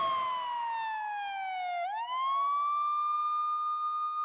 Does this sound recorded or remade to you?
recorded